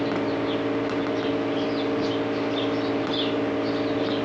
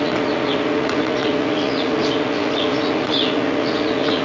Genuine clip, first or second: first